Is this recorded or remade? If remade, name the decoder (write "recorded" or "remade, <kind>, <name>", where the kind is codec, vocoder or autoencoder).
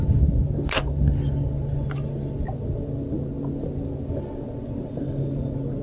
recorded